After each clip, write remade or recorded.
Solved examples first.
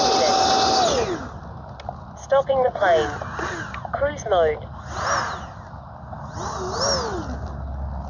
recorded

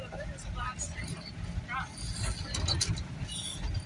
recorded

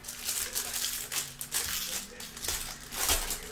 recorded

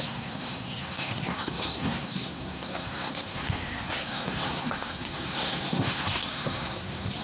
remade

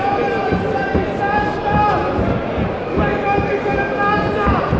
recorded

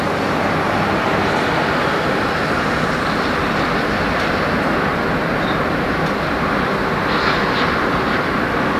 recorded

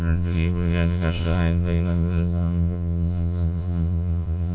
remade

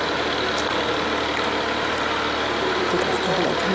recorded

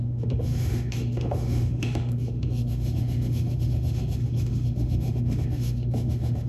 remade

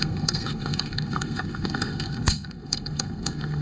remade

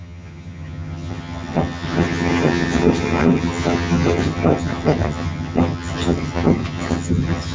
remade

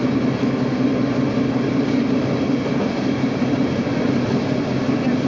recorded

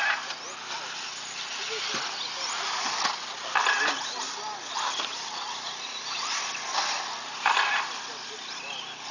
recorded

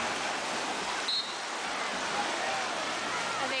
recorded